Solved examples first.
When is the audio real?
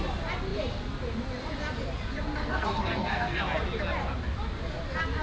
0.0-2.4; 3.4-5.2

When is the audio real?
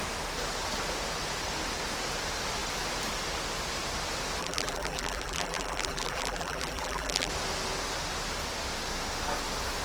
0.0-4.4; 7.3-9.8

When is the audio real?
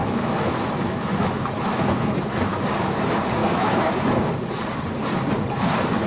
2.6-3.4; 3.9-6.1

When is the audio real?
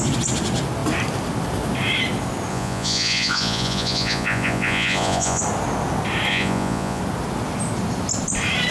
0.0-2.5; 5.4-6.3; 7.0-8.7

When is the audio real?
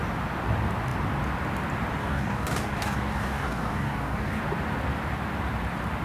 0.0-2.0; 4.4-6.0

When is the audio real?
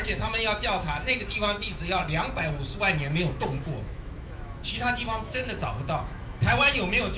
2.0-3.1